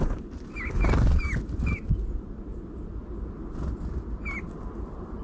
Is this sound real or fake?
real